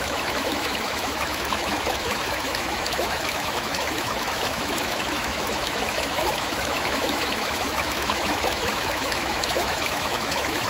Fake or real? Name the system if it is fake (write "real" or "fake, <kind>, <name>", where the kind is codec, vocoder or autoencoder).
fake, autoencoder, DAC-VAE